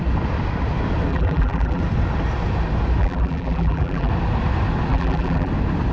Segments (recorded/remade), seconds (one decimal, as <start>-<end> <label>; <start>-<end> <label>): 0.0-1.1 recorded; 1.1-1.8 remade; 1.8-3.0 recorded; 3.0-4.1 remade; 4.1-4.9 recorded; 4.9-5.5 remade; 5.5-5.9 recorded